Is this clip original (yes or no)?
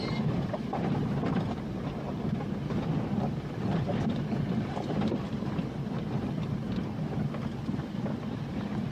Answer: no